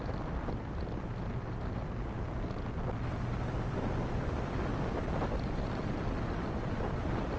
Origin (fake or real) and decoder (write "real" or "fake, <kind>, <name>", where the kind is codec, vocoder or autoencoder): real